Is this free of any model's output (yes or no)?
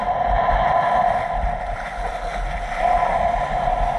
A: yes